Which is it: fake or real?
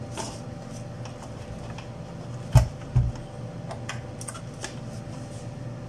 real